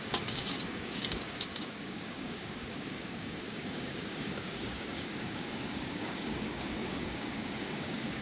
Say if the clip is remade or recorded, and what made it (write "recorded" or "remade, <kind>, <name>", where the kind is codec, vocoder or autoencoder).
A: remade, codec, DAC